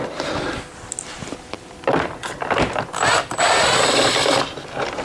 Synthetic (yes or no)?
no